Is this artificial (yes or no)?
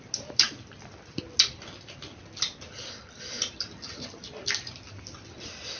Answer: no